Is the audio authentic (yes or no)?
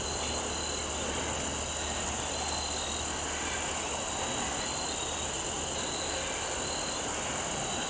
yes